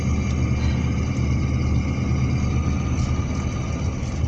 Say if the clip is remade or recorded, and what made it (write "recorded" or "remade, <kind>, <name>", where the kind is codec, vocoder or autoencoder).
recorded